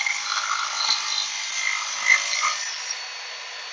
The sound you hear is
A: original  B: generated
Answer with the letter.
A